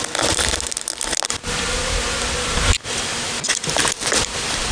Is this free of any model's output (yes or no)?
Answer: yes